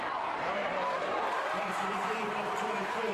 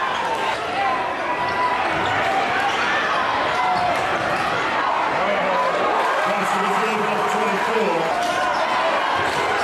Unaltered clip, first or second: second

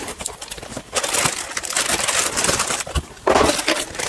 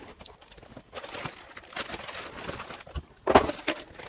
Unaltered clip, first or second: second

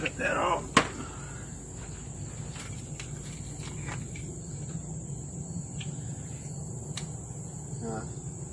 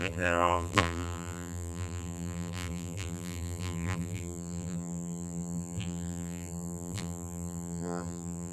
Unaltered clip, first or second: first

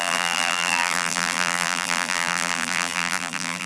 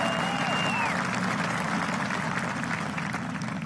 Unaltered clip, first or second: second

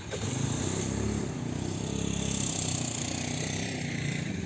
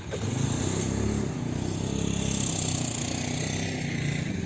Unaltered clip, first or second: second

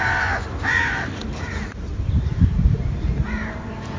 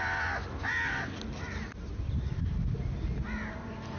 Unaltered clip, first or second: second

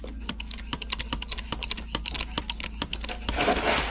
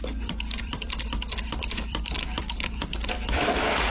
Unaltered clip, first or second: first